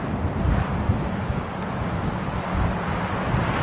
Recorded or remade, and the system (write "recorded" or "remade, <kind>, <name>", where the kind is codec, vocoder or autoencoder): recorded